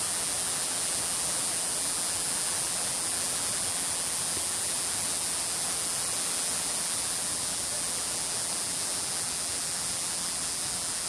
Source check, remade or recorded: remade